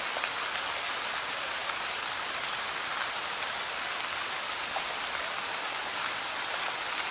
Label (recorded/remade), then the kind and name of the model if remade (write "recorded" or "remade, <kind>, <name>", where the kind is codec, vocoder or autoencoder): recorded